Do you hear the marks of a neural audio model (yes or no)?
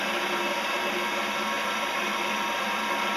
no